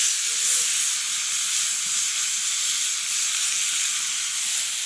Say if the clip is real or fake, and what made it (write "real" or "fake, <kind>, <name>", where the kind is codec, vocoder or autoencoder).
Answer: real